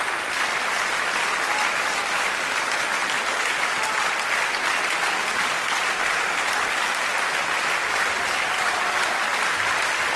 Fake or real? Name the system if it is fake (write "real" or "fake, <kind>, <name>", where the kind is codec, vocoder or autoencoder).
real